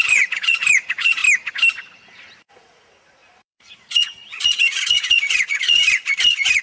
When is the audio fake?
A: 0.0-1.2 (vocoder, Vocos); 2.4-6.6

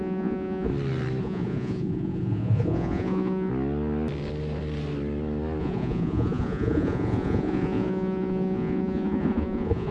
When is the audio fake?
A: 0.0-0.7 (vocoder, Vocos); 1.2-3.5; 5.6-9.9

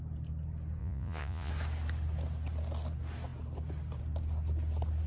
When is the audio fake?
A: 0.8-1.5 (vocoder, Vocos)

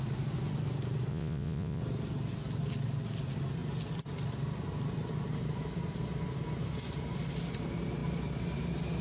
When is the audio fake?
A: 1.1-1.8 (vocoder, Vocos)